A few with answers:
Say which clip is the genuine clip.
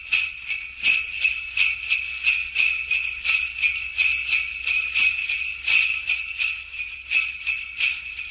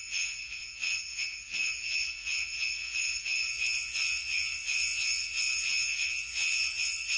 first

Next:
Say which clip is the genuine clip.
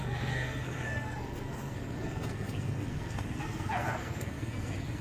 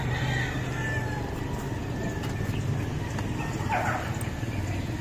second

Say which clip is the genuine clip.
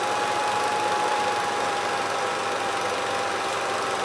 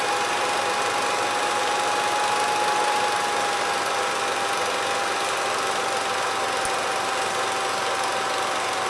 second